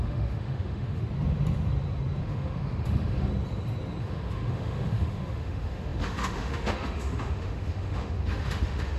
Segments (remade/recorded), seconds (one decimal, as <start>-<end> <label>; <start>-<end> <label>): 0.0-1.0 remade; 1.0-2.2 recorded; 2.2-3.3 remade; 3.3-4.0 recorded; 4.0-9.0 remade